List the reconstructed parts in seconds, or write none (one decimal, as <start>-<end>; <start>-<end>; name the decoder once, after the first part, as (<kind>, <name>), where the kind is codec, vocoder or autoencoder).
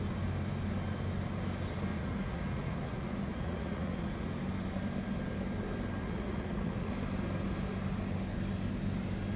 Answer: 1.9-4.3 (vocoder, Vocos); 6.0-6.9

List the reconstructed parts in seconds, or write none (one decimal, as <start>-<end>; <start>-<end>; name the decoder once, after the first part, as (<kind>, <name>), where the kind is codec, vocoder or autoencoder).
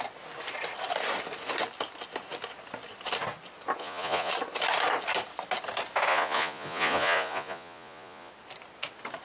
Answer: 3.8-4.3 (vocoder, Vocos); 6.1-8.3